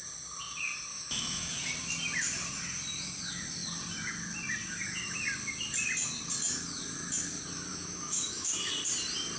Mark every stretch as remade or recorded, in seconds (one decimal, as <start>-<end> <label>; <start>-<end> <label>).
0.0-0.9 recorded; 0.9-1.5 remade; 1.5-7.7 recorded; 7.7-8.7 remade; 8.7-9.4 recorded